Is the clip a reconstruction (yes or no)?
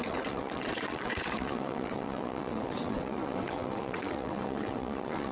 yes